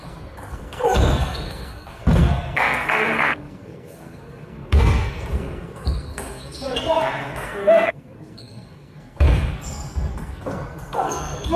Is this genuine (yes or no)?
no